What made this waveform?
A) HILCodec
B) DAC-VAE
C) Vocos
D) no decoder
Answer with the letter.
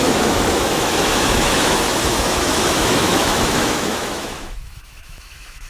B